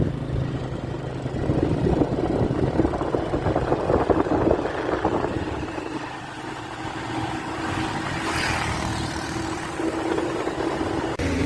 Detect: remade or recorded recorded